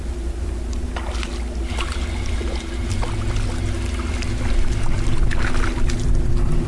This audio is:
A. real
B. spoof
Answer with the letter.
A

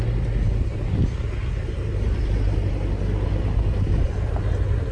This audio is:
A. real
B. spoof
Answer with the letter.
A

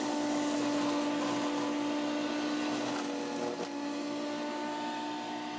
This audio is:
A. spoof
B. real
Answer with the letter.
B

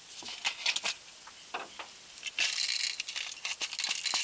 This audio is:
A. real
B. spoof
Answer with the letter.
A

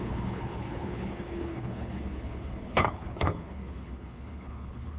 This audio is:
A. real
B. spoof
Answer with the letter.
B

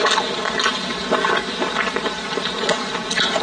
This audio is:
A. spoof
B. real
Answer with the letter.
B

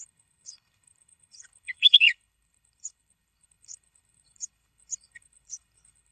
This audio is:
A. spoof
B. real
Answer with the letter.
A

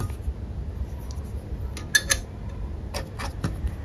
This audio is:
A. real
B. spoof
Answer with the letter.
A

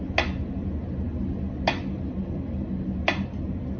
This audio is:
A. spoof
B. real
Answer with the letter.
B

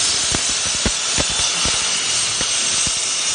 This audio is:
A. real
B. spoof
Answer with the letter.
A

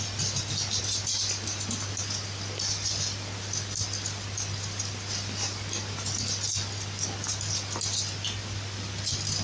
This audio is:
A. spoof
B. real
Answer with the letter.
B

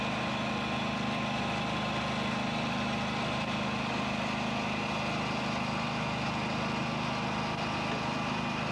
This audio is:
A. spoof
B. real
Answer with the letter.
B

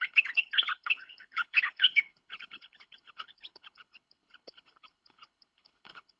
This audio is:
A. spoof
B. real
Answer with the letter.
A